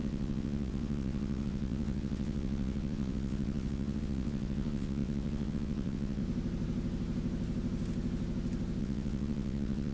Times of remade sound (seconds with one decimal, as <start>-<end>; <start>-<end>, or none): 0.0-6.2; 8.8-9.9